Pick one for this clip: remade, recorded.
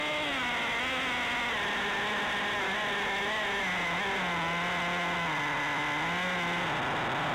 recorded